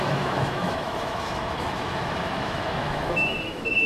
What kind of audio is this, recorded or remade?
remade